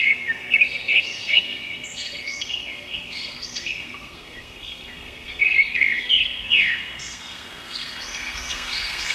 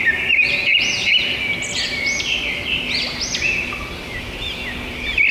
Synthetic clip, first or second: first